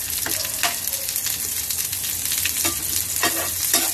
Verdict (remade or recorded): recorded